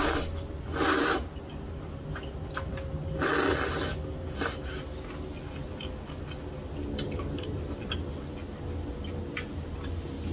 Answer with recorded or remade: recorded